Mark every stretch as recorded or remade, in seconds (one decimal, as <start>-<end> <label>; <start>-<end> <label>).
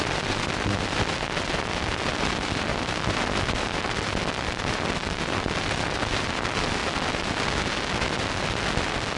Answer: 0.0-6.8 remade; 6.8-9.2 recorded